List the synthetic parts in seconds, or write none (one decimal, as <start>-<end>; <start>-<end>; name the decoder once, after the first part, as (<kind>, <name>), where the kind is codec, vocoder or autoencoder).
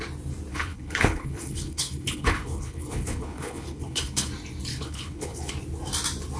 0.5-4.3 (codec, HILCodec); 4.7-5.5